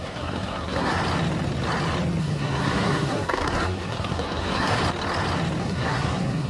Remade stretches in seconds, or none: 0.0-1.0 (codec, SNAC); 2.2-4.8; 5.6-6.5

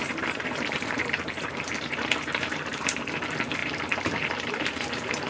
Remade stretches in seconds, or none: 0.0-3.2 (vocoder, BigVGAN v2); 3.6-5.3

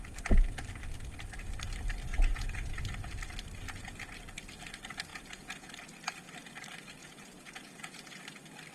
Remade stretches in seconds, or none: 2.1-2.8 (vocoder, Vocos); 5.1-5.7; 7.0-8.2

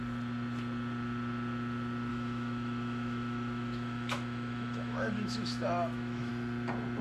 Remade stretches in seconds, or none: 2.1-6.3 (autoencoder, DAC-VAE)

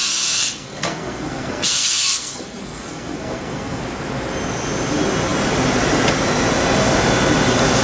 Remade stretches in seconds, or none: 0.0-3.8 (codec, SNAC)

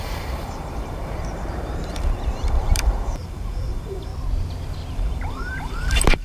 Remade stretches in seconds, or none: 0.0-4.1 (vocoder, BigVGAN v2); 4.9-6.2